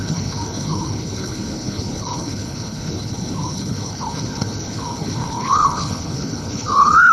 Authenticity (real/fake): fake